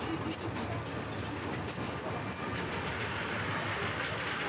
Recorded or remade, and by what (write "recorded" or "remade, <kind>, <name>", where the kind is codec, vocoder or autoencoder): recorded